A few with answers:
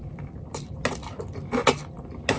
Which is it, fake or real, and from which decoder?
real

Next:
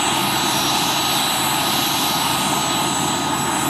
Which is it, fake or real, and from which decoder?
real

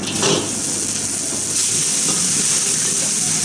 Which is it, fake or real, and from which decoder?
real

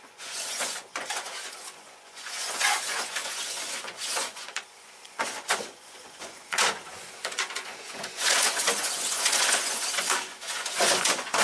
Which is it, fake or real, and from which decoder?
fake, vocoder, Vocos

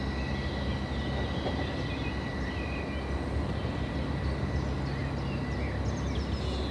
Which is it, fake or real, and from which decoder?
real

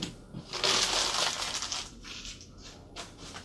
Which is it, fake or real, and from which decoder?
real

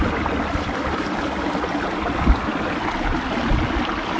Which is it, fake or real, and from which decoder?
real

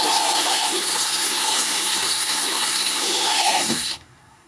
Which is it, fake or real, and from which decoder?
fake, codec, SNAC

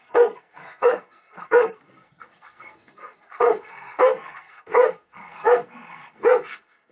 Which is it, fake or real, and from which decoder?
fake, codec, SNAC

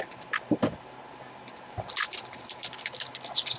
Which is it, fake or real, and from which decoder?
real